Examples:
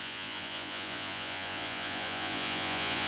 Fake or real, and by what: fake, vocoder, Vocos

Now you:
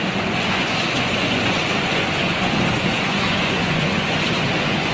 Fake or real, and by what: fake, vocoder, Vocos